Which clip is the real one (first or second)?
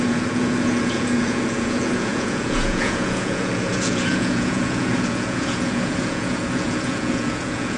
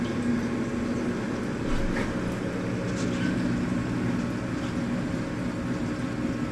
second